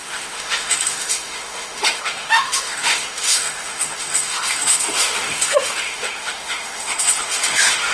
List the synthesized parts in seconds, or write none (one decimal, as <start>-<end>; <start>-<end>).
0.0-7.9